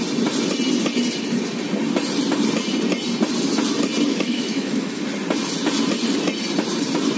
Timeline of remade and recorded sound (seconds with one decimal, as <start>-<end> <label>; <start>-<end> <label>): 0.0-4.1 recorded; 4.1-5.0 remade; 5.0-7.2 recorded

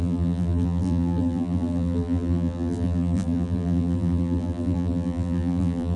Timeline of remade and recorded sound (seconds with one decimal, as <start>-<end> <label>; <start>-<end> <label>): 0.0-6.0 remade

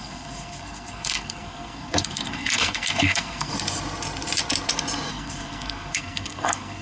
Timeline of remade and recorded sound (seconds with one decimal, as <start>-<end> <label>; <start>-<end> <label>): 0.0-3.5 remade; 3.5-5.1 recorded; 5.1-6.8 remade

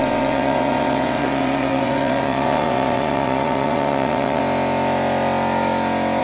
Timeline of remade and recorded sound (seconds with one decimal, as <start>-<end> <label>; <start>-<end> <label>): 0.0-4.4 remade; 4.4-6.2 recorded

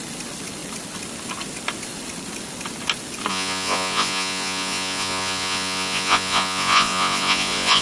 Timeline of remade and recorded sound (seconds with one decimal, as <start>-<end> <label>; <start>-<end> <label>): 0.0-3.3 recorded; 3.3-7.8 remade

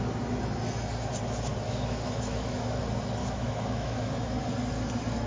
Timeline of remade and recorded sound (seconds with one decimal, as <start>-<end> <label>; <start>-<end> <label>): 0.0-1.5 recorded; 1.5-2.8 remade; 2.8-3.2 recorded; 3.2-4.4 remade; 4.4-5.3 recorded

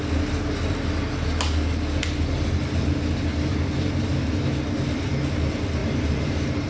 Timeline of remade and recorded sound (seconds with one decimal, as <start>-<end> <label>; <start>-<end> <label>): 0.0-5.8 recorded; 5.8-6.7 remade

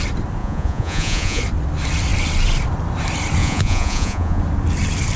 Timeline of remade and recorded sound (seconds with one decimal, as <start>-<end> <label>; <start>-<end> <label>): 0.0-0.4 recorded; 0.4-1.4 remade; 1.4-3.4 recorded; 3.4-4.4 remade; 4.4-5.2 recorded